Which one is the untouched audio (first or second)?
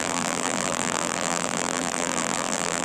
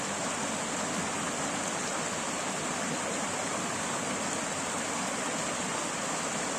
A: second